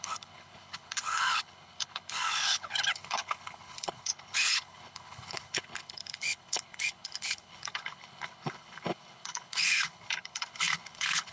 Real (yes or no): no